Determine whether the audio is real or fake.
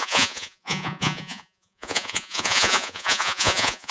fake